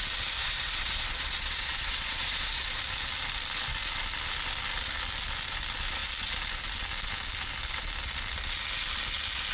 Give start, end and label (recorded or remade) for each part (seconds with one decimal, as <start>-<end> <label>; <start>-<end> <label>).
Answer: 0.0-0.4 recorded; 0.4-2.8 remade; 2.8-9.5 recorded